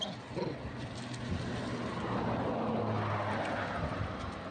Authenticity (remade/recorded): recorded